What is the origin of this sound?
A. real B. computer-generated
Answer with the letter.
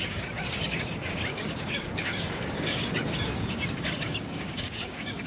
B